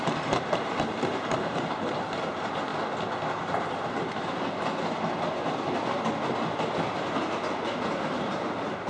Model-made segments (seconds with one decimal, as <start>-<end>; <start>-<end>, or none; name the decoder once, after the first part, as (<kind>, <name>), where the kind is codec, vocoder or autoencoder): 0.0-2.7 (vocoder, BigVGAN v2); 8.0-8.9